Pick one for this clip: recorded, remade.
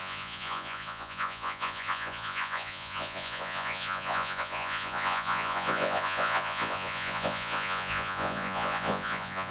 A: remade